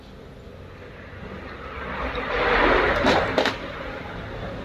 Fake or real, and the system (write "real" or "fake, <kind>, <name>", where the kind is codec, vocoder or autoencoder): real